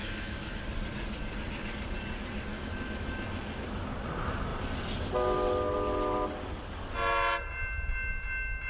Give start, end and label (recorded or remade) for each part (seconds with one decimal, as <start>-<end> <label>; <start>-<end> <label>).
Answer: 0.0-0.6 remade; 0.6-2.5 recorded; 2.5-3.6 remade; 3.6-8.7 recorded